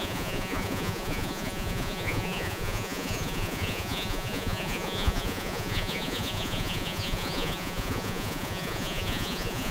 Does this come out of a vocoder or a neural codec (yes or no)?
yes